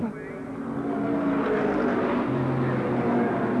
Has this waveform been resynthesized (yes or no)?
no